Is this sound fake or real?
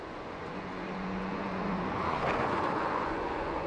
fake